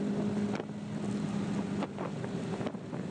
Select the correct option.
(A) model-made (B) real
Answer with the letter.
B